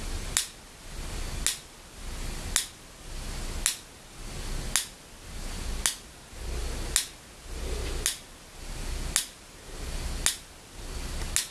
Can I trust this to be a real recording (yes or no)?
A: yes